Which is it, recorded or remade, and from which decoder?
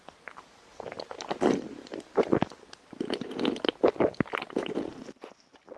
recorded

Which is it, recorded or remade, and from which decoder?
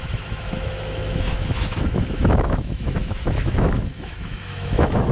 remade, autoencoder, DAC-VAE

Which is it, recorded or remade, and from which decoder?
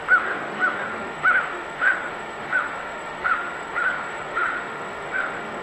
remade, autoencoder, DAC-VAE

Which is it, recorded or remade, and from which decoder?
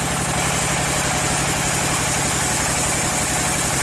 recorded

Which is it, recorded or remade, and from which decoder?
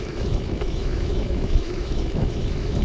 remade, autoencoder, DAC-VAE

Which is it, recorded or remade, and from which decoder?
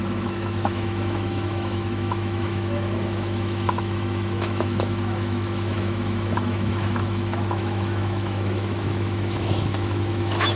remade, autoencoder, DAC-VAE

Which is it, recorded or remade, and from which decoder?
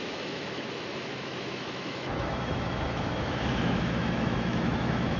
remade, autoencoder, DAC-VAE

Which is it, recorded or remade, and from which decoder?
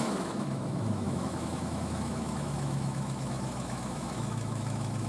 remade, autoencoder, DAC-VAE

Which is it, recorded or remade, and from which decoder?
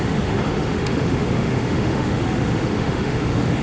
remade, autoencoder, DAC-VAE